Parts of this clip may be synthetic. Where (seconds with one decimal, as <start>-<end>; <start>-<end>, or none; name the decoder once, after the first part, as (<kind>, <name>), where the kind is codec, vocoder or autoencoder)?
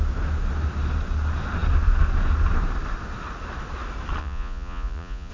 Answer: 4.2-5.3 (vocoder, Vocos)